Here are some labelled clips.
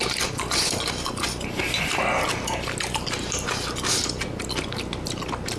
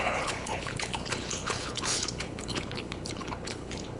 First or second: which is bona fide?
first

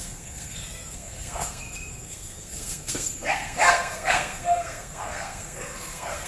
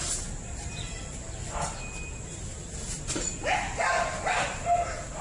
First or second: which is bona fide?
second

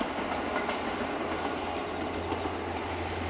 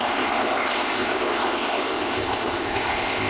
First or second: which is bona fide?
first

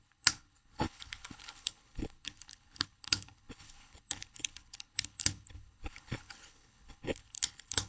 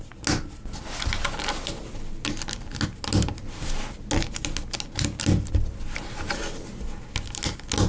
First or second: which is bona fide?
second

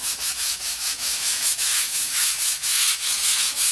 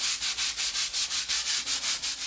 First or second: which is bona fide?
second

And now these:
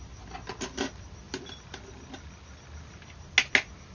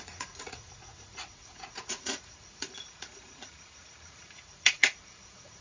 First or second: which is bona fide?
first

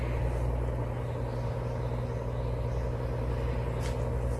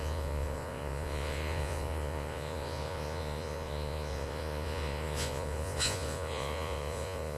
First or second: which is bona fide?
first